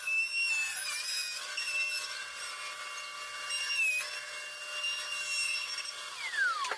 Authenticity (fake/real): real